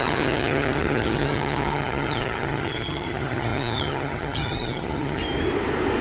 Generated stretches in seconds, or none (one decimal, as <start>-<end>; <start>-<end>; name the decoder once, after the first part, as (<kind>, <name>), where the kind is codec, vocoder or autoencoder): 0.0-5.2 (vocoder, HiFi-GAN)